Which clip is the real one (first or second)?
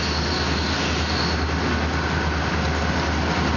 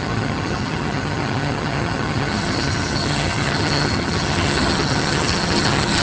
first